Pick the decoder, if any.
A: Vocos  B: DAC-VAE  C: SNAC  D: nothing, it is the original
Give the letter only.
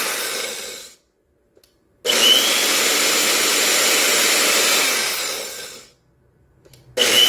D